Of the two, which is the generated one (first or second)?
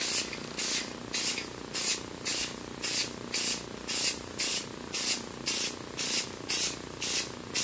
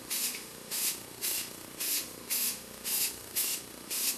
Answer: second